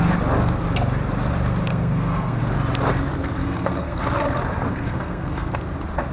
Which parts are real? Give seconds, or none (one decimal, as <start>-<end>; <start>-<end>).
0.0-1.7; 2.4-3.4; 4.0-4.7; 5.5-6.1